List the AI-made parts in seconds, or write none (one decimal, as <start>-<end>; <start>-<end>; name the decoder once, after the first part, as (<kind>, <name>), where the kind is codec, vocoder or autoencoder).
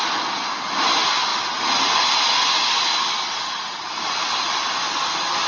none